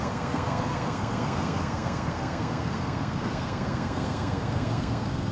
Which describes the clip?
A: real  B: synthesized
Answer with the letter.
B